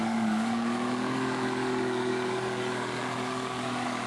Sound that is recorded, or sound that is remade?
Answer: remade